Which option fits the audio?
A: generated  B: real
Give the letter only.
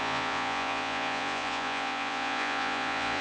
A